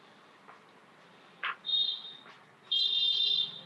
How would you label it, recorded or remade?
recorded